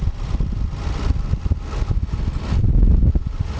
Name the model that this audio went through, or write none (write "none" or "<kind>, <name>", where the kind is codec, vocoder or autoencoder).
none